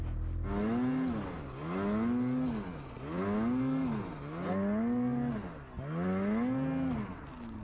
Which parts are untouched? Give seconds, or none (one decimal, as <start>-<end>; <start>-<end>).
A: 0.0-7.6